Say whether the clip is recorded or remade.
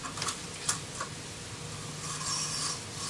recorded